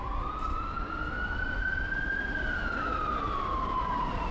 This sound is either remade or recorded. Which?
remade